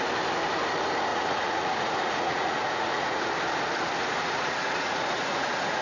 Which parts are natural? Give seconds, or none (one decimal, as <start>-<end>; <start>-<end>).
0.0-1.1; 3.2-4.1